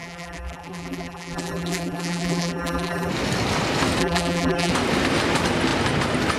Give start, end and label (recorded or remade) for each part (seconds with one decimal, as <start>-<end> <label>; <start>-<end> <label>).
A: 0.0-3.1 remade; 3.1-4.0 recorded; 4.0-4.7 remade; 4.7-6.4 recorded